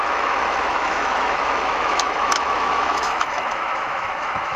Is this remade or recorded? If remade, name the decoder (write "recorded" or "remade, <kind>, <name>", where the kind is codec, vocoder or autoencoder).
remade, autoencoder, DAC-VAE